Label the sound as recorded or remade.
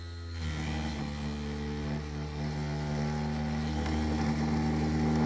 recorded